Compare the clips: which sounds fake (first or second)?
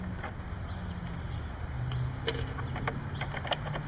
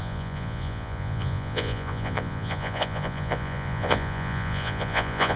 second